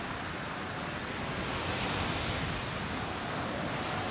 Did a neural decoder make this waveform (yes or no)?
no